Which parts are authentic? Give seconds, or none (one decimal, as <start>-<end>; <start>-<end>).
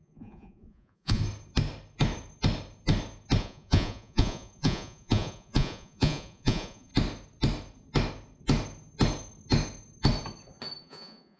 1.2-3.4; 6.9-10.8